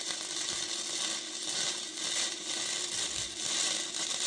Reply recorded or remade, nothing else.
recorded